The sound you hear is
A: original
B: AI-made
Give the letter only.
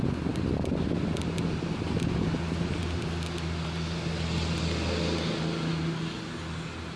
A